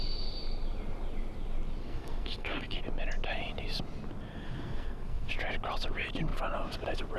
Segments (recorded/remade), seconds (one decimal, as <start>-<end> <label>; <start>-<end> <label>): 0.0-1.8 recorded; 1.8-2.8 remade; 2.8-4.3 recorded; 4.3-5.3 remade; 5.3-7.2 recorded